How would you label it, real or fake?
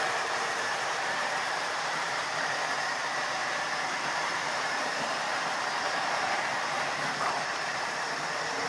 fake